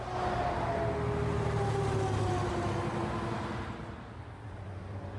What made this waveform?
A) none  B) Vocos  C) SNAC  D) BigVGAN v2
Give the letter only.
A